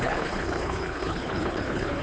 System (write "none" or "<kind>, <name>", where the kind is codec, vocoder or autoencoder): codec, HILCodec